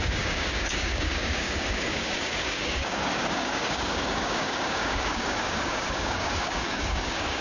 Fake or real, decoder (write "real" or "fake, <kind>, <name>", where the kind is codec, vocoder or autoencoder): fake, codec, DAC